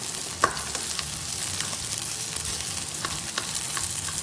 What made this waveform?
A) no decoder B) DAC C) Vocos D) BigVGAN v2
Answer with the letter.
A